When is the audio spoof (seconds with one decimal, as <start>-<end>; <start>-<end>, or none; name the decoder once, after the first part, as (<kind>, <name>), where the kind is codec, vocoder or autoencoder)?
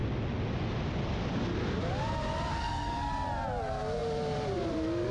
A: 2.5-3.0 (codec, SNAC)